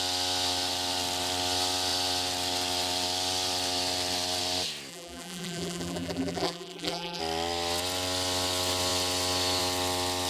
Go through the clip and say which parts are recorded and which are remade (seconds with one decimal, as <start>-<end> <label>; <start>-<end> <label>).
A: 0.0-4.9 recorded; 4.9-7.2 remade; 7.2-10.3 recorded